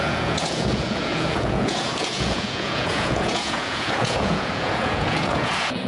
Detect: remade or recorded remade